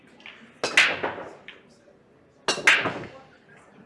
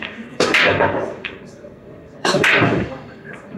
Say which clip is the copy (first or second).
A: second